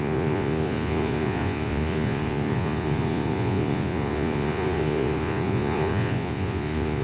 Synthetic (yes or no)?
yes